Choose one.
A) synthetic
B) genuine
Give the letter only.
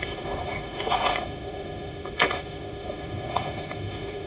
A